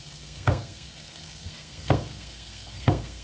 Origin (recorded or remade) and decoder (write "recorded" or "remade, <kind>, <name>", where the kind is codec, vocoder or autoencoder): remade, codec, SNAC